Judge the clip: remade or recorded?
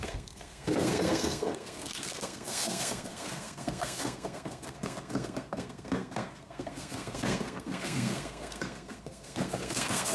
remade